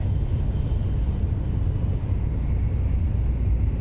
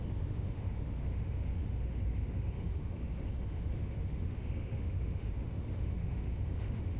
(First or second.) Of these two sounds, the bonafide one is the first